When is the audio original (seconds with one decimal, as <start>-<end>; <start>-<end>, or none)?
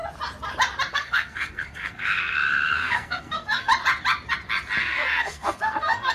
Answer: 0.0-0.9; 3.7-4.8